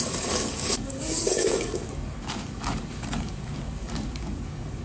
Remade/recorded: remade